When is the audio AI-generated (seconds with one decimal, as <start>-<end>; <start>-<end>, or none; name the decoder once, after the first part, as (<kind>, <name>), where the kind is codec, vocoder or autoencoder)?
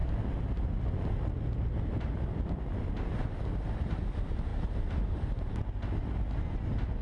4.5-5.5 (vocoder, BigVGAN v2)